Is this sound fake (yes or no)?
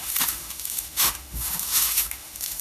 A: yes